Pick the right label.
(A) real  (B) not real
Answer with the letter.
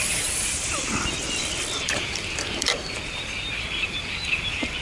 B